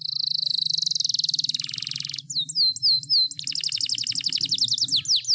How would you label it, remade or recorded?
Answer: recorded